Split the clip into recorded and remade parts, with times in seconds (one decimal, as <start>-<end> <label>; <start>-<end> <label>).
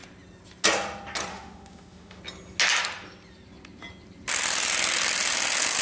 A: 0.0-1.3 recorded; 1.3-2.2 remade; 2.2-5.8 recorded